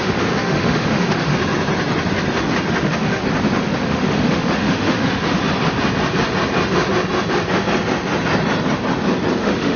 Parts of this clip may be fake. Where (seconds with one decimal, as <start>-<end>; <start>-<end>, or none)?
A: 0.0-1.3; 2.8-3.2; 3.8-5.2; 9.4-9.8